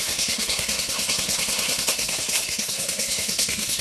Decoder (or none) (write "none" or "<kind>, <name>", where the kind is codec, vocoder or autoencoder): codec, SNAC